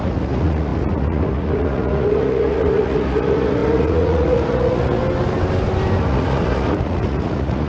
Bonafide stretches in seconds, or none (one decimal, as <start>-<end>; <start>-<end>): 5.0-6.0